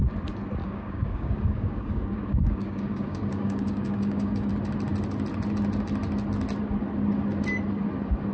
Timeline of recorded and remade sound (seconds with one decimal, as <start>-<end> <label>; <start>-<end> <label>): 0.0-0.6 recorded; 0.6-4.5 remade; 4.5-8.3 recorded